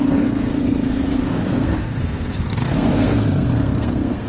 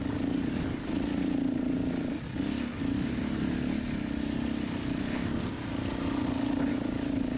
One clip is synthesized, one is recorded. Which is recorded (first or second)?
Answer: second